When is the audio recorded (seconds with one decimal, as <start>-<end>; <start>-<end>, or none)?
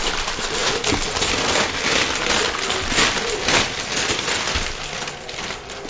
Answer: 0.0-5.9